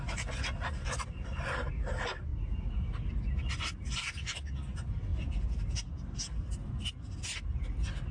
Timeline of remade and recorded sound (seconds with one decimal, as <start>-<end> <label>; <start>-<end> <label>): 0.0-8.1 recorded